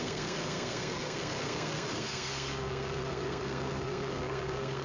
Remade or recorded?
remade